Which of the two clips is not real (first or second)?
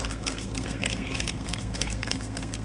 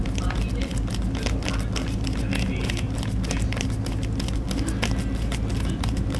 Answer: first